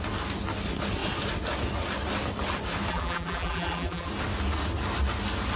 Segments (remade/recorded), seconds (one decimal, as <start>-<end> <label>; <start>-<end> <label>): 0.0-2.9 recorded; 2.9-4.1 remade; 4.1-5.6 recorded